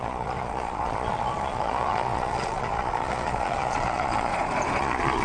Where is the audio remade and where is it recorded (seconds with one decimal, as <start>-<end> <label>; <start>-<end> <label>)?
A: 0.0-4.3 remade; 4.3-4.8 recorded; 4.8-5.2 remade